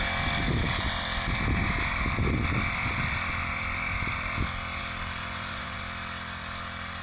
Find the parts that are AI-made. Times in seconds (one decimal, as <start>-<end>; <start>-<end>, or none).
5.2-5.8